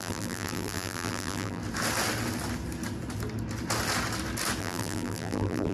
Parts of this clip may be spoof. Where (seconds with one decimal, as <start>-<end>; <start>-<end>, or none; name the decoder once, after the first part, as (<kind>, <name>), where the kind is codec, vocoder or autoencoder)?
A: 0.0-1.6 (vocoder, BigVGAN v2); 4.6-5.7